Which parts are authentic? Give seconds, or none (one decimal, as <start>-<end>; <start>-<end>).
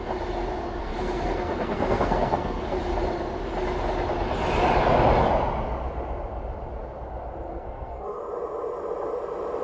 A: 0.0-0.8; 2.8-7.5; 8.2-9.6